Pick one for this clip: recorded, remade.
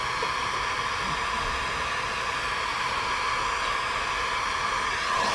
recorded